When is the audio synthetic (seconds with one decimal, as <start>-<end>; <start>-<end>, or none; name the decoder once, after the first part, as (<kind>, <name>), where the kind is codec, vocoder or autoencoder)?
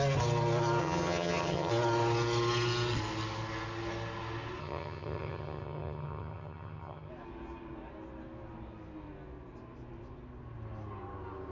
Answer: 0.8-1.7 (vocoder, HiFi-GAN); 4.6-7.1